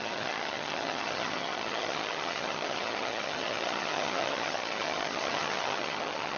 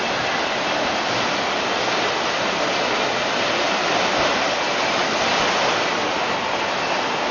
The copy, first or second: first